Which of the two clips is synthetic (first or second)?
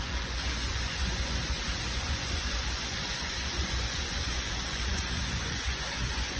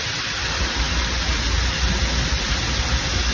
first